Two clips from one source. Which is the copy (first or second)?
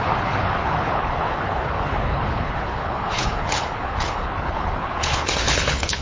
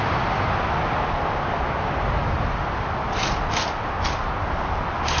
first